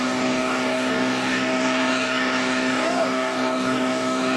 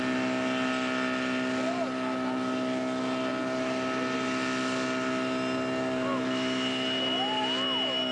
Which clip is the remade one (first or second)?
first